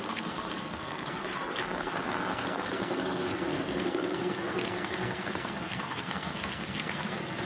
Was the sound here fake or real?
fake